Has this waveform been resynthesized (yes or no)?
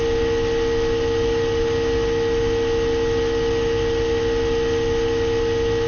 no